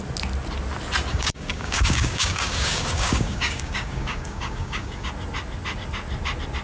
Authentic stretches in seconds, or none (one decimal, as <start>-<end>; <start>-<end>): 0.0-1.1; 5.1-6.6